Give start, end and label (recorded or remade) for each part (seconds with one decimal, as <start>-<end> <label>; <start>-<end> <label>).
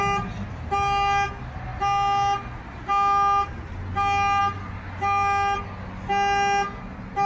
0.0-7.3 recorded